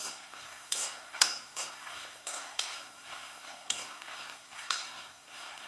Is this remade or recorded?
remade